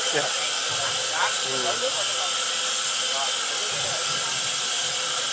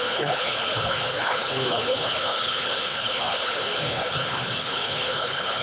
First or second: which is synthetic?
second